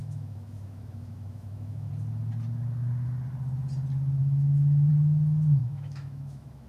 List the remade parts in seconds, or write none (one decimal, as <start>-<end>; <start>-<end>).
0.0-1.9; 4.2-4.9; 5.6-6.7